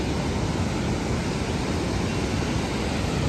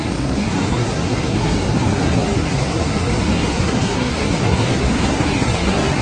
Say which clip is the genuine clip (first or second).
first